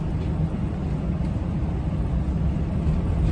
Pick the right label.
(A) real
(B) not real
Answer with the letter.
A